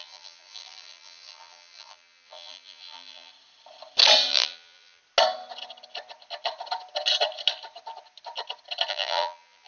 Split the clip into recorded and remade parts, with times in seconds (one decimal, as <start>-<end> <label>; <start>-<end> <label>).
0.0-3.3 remade; 3.3-4.3 recorded; 4.3-5.0 remade; 5.0-8.9 recorded; 8.9-9.7 remade